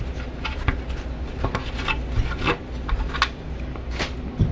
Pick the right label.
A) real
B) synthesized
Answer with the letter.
A